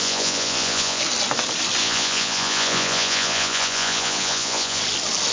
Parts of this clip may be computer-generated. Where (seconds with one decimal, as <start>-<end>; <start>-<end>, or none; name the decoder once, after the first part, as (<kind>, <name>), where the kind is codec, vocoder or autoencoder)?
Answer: 0.0-1.0 (vocoder, Vocos); 1.8-4.8